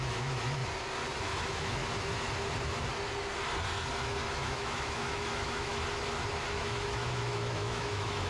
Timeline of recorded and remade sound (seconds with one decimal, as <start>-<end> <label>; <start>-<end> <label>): 0.0-0.6 remade; 0.6-1.2 recorded; 1.2-1.8 remade; 1.8-4.3 recorded; 4.3-5.7 remade; 5.7-6.5 recorded; 6.5-8.3 remade